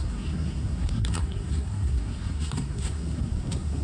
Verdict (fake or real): fake